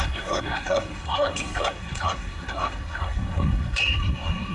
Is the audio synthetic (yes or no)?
yes